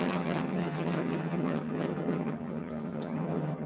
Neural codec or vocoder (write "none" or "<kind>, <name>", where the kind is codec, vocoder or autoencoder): vocoder, HiFi-GAN